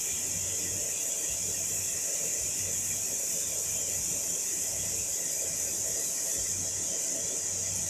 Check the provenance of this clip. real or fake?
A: real